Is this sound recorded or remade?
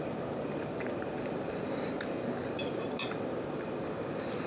recorded